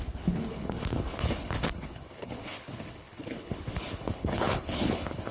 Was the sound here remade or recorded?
remade